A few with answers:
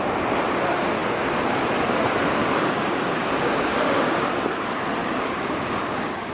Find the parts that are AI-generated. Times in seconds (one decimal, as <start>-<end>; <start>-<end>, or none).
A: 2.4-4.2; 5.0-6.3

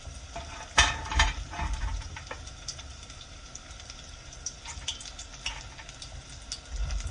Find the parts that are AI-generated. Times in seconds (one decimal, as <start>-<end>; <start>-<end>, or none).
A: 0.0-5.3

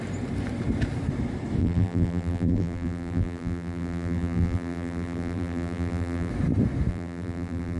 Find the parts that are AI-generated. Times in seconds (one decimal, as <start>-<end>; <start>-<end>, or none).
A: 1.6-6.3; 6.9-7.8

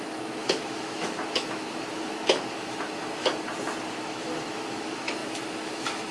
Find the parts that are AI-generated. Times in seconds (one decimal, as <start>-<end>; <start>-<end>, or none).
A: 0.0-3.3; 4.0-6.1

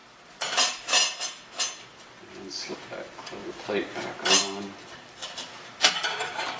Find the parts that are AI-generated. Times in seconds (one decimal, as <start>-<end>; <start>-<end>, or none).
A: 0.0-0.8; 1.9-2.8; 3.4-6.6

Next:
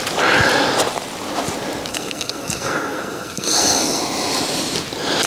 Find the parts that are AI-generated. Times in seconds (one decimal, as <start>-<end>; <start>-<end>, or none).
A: 1.9-4.0

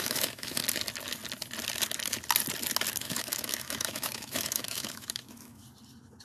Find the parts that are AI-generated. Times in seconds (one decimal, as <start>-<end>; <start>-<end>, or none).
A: 0.0-0.6; 3.0-5.6

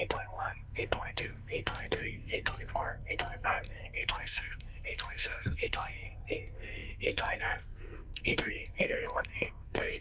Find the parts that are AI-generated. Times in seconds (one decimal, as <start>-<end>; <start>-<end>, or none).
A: 0.0-10.0